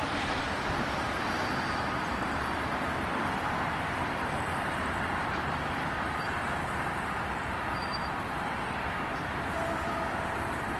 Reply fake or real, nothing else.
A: fake